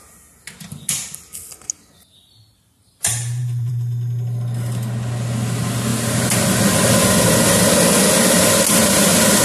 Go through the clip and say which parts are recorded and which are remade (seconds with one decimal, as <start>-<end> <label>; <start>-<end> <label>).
0.0-2.8 recorded; 2.8-3.7 remade; 3.7-5.9 recorded; 5.9-6.6 remade; 6.6-9.4 recorded